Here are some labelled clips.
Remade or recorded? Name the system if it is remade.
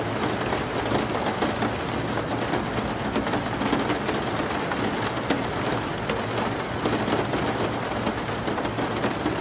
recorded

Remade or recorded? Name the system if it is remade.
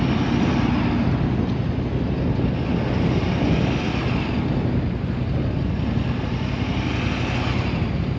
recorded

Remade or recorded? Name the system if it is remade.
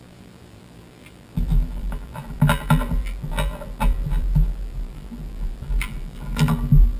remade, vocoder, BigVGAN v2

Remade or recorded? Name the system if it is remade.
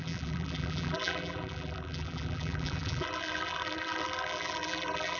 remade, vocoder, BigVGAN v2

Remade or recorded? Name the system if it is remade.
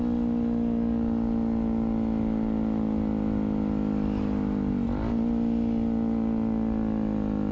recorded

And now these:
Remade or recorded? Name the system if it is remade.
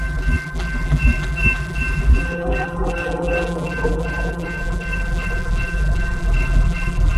remade, vocoder, BigVGAN v2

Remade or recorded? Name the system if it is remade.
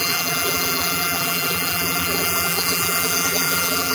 remade, vocoder, BigVGAN v2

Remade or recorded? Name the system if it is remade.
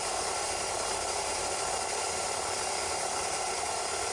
remade, vocoder, BigVGAN v2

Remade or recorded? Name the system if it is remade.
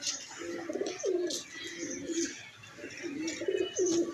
recorded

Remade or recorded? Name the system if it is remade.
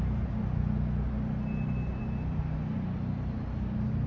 recorded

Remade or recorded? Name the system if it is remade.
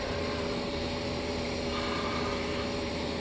remade, vocoder, BigVGAN v2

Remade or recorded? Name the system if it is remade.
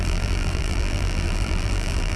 remade, vocoder, BigVGAN v2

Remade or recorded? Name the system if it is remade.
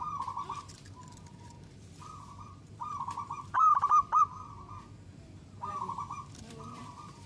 remade, vocoder, BigVGAN v2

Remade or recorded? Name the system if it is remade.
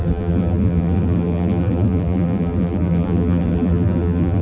remade, vocoder, BigVGAN v2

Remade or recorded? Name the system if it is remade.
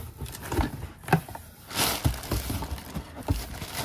recorded